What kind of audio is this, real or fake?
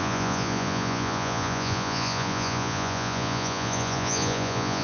fake